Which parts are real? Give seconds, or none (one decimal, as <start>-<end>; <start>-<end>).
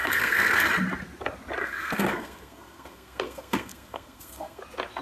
0.7-1.6; 4.6-5.0